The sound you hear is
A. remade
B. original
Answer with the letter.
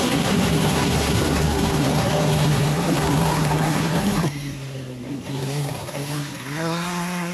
A